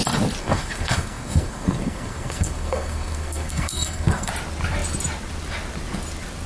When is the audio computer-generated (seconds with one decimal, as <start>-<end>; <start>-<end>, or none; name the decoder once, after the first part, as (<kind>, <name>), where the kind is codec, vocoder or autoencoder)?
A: 0.4-4.3 (codec, SNAC)